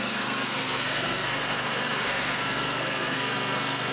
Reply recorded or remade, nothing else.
remade